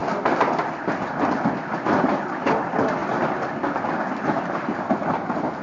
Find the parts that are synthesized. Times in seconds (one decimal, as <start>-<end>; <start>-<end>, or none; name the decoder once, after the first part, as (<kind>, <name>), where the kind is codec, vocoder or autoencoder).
none